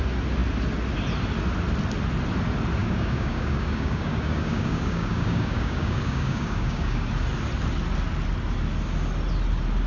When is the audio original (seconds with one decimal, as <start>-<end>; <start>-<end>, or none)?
0.0-2.8; 7.1-9.9